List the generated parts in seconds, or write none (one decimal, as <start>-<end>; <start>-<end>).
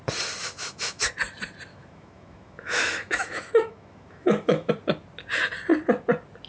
0.4-1.1; 1.7-4.7